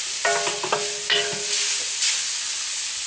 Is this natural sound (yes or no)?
yes